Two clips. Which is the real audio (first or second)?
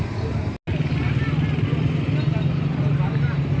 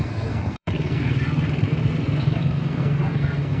first